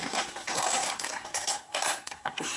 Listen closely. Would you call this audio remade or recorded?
remade